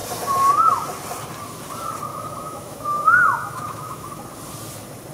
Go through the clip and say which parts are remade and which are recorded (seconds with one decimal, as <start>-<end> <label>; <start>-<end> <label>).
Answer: 0.0-2.1 recorded; 2.1-4.2 remade; 4.2-5.1 recorded